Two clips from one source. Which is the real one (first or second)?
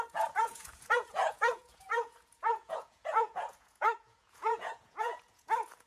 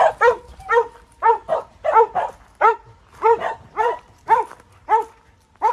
second